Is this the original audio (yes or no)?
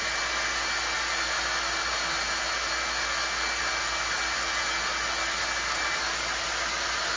yes